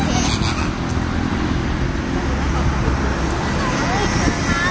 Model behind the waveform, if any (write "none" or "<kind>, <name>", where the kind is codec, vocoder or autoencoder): none